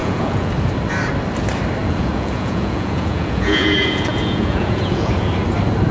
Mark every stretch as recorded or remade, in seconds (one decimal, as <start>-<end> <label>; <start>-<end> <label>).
0.0-0.5 remade; 0.5-1.8 recorded; 1.8-5.3 remade; 5.3-5.9 recorded